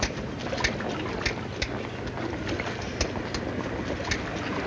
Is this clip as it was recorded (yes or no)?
yes